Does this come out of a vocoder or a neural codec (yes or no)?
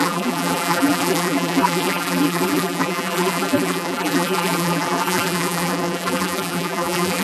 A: yes